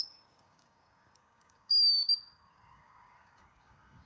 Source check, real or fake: fake